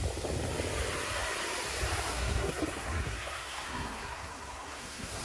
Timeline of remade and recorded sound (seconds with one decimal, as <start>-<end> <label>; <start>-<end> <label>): 0.0-2.1 recorded; 2.1-5.2 remade